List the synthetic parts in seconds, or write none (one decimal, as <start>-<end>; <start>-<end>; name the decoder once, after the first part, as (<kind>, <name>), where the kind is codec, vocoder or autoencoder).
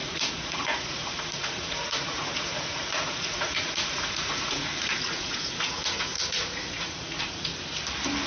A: 0.0-7.5 (vocoder, Vocos)